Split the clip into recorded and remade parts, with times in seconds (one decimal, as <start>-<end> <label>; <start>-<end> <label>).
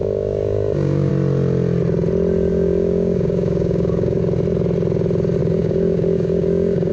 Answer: 0.0-1.1 remade; 1.1-2.5 recorded; 2.5-4.2 remade; 4.2-5.4 recorded; 5.4-6.9 remade